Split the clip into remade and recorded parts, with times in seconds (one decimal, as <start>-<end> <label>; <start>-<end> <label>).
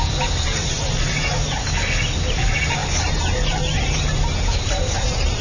0.0-1.3 remade; 1.3-2.3 recorded; 2.3-5.4 remade